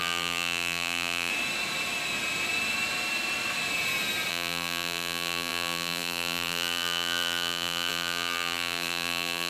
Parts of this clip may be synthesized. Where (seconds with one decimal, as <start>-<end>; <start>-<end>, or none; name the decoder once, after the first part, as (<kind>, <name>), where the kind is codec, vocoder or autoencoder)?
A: 0.0-1.3 (vocoder, BigVGAN v2); 4.3-9.5